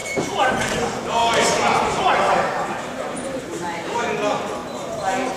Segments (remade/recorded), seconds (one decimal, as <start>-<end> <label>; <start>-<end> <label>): 0.0-0.5 remade; 0.5-1.2 recorded; 1.2-4.0 remade; 4.0-5.4 recorded